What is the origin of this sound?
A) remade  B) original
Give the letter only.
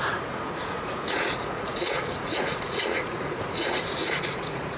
A